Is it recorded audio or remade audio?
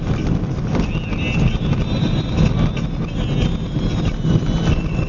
recorded